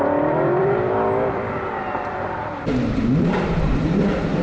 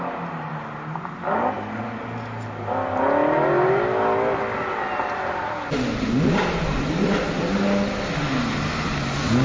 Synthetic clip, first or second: first